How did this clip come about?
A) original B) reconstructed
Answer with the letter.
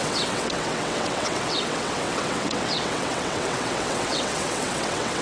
B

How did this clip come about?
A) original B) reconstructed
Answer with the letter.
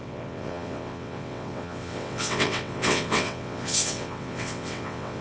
B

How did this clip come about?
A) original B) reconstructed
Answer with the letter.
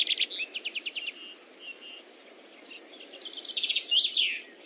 A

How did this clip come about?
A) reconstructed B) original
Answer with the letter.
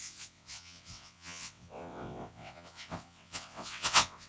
A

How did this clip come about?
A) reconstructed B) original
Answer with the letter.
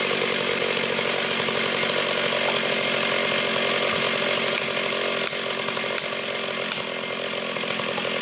B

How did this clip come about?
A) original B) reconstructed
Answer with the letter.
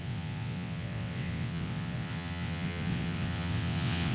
B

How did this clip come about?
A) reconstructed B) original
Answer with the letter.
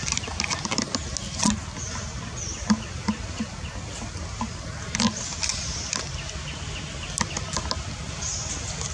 B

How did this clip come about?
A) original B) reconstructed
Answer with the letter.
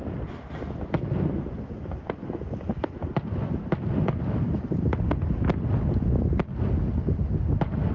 A